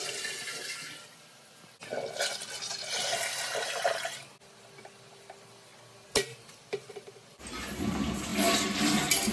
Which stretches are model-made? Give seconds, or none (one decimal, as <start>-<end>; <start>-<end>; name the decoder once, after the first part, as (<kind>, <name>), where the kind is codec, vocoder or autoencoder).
none